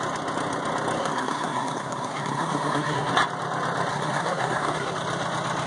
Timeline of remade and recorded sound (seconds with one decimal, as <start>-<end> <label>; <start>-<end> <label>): 0.0-1.0 recorded; 1.0-3.1 remade; 3.1-3.9 recorded; 3.9-4.9 remade; 4.9-5.7 recorded